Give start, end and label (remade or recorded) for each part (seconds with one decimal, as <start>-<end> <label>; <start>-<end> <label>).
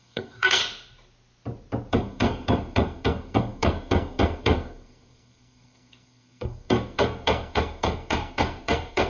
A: 0.0-0.6 remade; 0.6-1.9 recorded; 1.9-9.1 remade